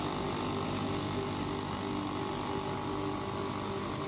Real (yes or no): yes